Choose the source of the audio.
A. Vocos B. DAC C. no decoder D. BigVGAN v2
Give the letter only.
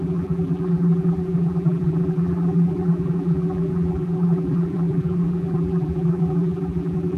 D